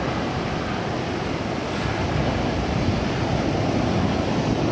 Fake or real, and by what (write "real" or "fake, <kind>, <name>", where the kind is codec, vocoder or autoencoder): real